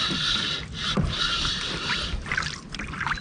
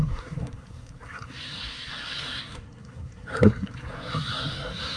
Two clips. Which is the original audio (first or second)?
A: first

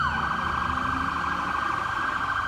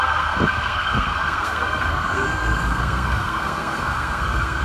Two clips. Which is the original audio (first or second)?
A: first